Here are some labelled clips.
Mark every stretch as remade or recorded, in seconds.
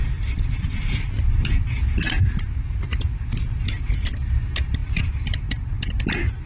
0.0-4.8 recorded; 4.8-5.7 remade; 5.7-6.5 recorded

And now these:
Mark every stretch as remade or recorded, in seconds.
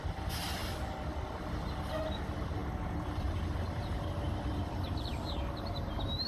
0.0-6.3 recorded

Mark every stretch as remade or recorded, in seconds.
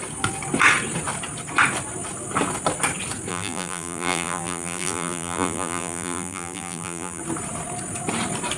0.0-3.3 recorded; 3.3-7.2 remade; 7.2-8.6 recorded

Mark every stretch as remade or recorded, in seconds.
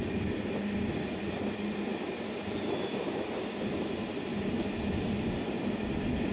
0.0-6.3 recorded